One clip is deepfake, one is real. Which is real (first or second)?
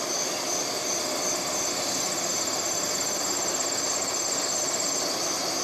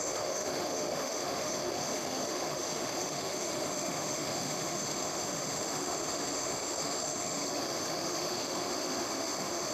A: first